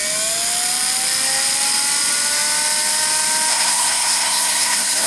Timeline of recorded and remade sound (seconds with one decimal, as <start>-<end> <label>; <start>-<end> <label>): 0.0-3.5 recorded; 3.5-5.1 remade